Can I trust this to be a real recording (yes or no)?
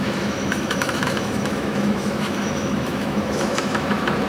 no